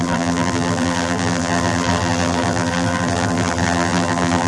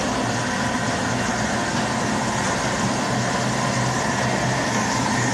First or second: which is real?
second